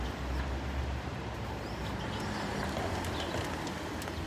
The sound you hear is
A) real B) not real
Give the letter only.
A